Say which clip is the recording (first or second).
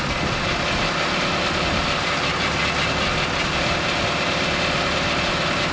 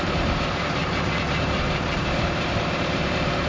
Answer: first